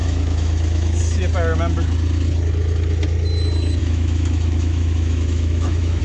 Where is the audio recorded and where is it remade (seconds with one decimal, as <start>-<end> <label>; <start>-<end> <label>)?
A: 0.0-1.0 remade; 1.0-3.8 recorded; 3.8-6.0 remade